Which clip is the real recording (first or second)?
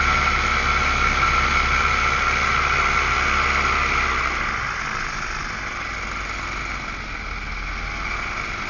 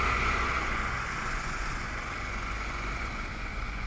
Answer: first